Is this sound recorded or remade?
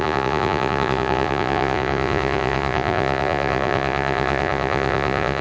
remade